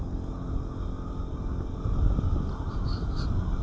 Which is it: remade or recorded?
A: recorded